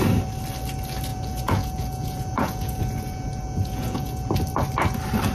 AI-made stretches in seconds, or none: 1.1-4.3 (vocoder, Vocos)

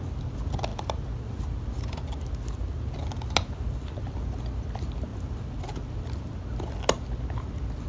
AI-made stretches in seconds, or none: none

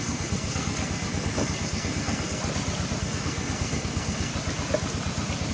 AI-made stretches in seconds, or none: 0.0-2.4 (codec, SNAC); 3.0-4.3

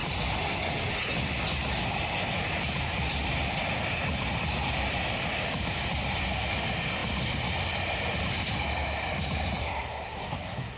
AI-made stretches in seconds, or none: 9.6-10.8 (codec, SNAC)

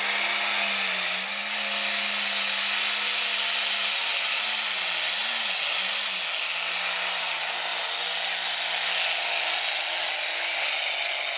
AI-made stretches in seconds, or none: none

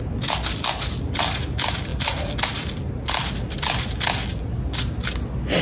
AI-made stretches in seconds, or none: none

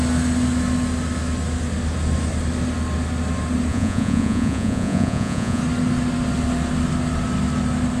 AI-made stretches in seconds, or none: 3.7-5.6 (vocoder, Vocos)